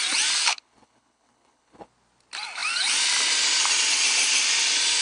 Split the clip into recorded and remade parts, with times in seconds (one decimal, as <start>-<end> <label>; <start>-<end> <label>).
0.0-0.5 recorded; 0.5-1.9 remade; 1.9-5.0 recorded